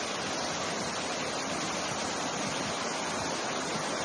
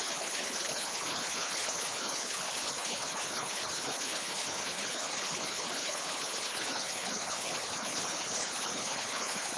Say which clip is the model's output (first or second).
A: second